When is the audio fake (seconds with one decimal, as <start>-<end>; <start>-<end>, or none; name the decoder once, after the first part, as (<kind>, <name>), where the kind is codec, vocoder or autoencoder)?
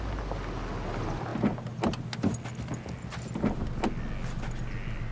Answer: none